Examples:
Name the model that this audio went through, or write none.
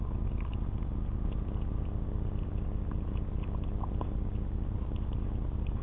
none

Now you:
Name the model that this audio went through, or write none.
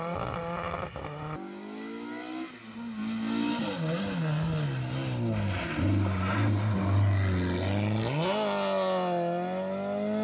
none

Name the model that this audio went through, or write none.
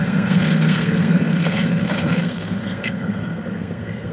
codec, SNAC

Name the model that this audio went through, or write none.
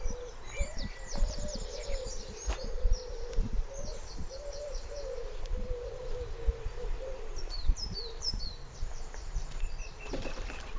vocoder, BigVGAN v2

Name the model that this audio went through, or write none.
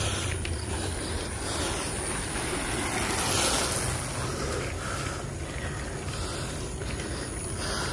none